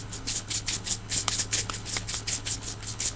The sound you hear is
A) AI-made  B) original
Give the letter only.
A